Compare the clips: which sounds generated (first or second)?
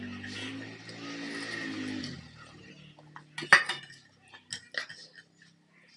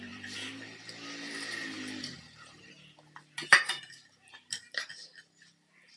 second